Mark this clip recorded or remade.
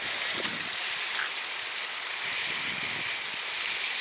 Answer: recorded